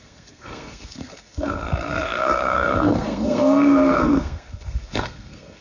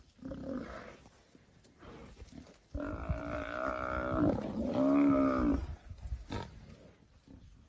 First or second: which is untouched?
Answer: second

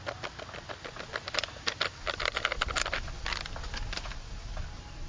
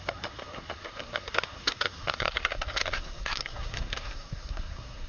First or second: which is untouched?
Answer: first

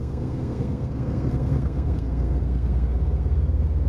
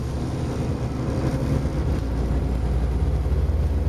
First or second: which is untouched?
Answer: second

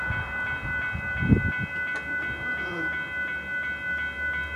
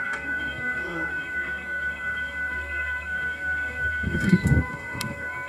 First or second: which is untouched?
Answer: first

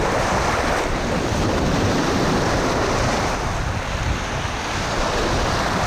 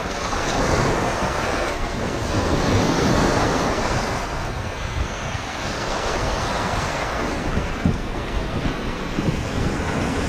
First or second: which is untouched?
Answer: first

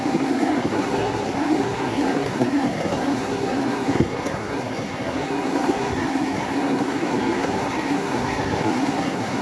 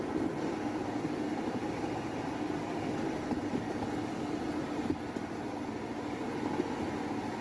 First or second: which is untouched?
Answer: second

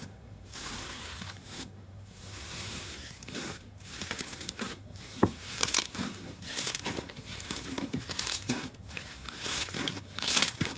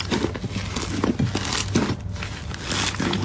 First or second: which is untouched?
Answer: second